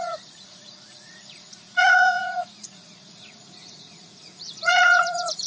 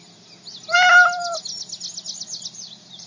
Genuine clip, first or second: second